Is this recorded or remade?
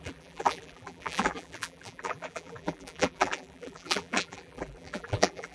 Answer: remade